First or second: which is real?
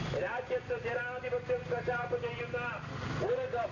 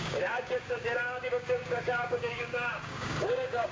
first